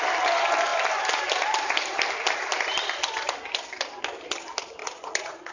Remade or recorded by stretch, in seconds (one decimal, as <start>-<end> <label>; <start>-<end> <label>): 0.0-4.8 recorded; 4.8-5.5 remade